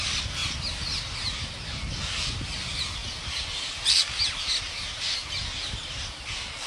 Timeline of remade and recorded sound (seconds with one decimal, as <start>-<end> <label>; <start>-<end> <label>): 0.0-6.7 recorded